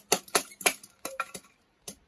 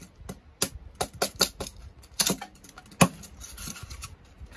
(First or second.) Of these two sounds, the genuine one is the second